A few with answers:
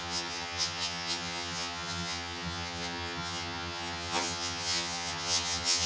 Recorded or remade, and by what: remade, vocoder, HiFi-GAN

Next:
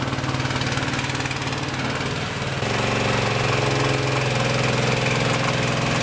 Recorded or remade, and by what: recorded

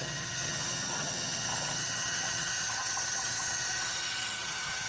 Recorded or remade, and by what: remade, vocoder, HiFi-GAN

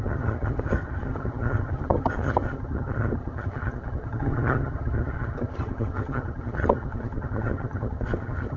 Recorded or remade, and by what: remade, vocoder, HiFi-GAN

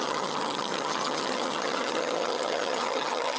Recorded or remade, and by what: remade, vocoder, HiFi-GAN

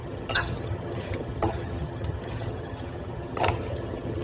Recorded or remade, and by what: remade, vocoder, HiFi-GAN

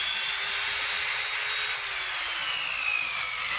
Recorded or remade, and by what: recorded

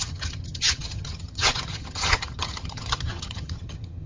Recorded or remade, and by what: remade, vocoder, HiFi-GAN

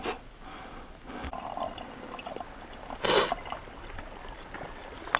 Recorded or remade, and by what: recorded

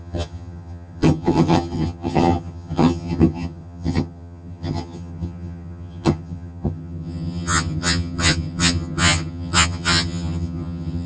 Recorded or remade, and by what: remade, vocoder, HiFi-GAN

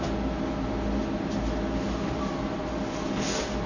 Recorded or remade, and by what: recorded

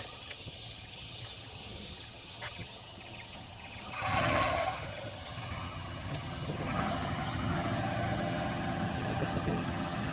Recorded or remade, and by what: remade, vocoder, HiFi-GAN